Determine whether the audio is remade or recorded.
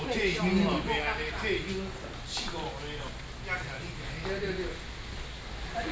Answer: recorded